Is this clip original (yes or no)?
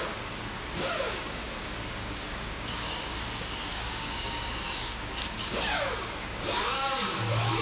no